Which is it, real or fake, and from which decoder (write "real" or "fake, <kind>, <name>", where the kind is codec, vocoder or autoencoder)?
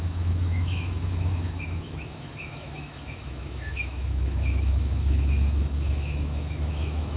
fake, autoencoder, DAC-VAE